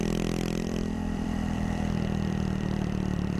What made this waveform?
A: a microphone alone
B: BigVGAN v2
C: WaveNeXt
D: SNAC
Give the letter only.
B